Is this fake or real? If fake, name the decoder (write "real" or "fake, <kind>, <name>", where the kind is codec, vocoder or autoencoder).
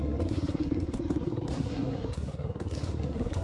fake, codec, SNAC